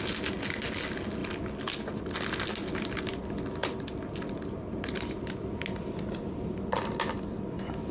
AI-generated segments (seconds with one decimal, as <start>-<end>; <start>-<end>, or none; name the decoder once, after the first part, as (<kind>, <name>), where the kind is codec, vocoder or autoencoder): none